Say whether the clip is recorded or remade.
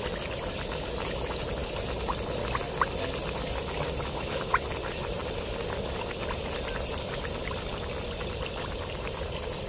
recorded